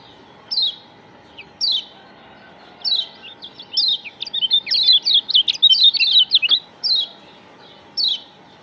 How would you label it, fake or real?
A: real